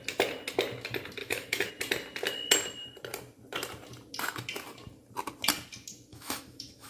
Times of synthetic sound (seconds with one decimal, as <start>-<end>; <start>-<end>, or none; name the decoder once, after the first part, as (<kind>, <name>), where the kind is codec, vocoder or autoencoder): 1.2-1.7 (autoencoder, DAC-VAE); 6.1-6.9